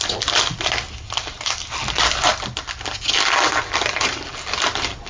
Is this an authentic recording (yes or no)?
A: yes